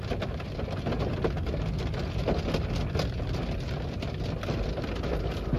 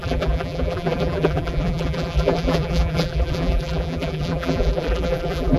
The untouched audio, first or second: first